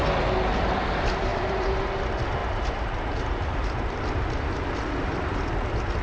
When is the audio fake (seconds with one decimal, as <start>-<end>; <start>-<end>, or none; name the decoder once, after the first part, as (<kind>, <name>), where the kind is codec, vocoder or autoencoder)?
1.3-1.9 (vocoder, BigVGAN v2); 2.4-6.0